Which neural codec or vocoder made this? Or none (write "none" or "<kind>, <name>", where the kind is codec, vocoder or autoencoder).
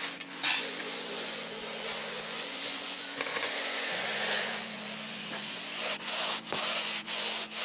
vocoder, Vocos